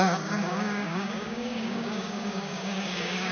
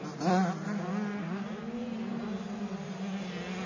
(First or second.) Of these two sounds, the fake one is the first